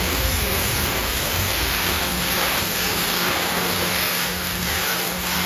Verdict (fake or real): fake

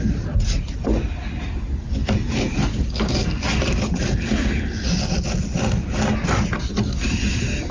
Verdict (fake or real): real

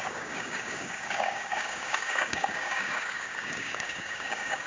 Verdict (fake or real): fake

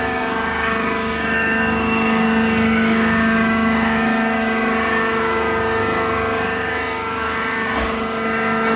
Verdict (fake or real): fake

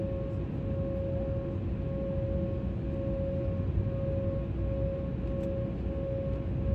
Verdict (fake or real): real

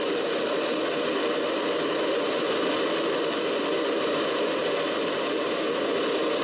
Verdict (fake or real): real